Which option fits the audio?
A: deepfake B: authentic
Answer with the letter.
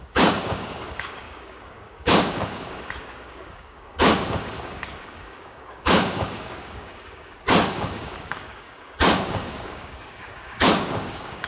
A